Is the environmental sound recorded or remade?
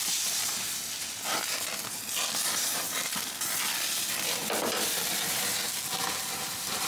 recorded